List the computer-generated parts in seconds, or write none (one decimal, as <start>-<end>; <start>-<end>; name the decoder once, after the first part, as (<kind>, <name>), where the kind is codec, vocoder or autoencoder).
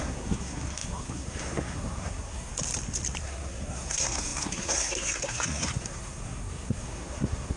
0.0-2.5 (codec, SNAC); 3.2-7.6